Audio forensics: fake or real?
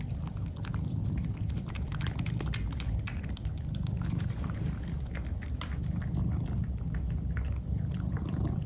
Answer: real